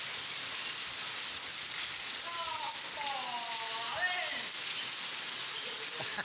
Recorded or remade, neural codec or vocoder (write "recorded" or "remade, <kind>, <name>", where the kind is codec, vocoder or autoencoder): recorded